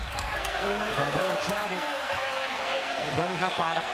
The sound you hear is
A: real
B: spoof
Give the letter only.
B